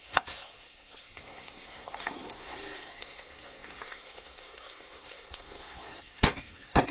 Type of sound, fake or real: fake